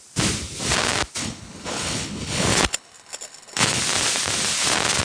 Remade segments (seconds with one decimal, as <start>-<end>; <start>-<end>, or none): 1.2-3.8